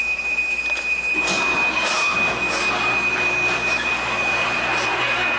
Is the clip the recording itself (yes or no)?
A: yes